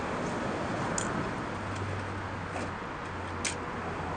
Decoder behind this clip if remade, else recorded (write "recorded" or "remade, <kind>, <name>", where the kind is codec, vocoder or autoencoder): recorded